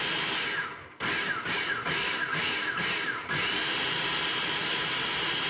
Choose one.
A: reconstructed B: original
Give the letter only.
B